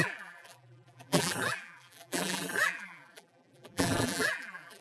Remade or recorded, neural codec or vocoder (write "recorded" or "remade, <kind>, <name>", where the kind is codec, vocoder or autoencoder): remade, vocoder, BigVGAN v2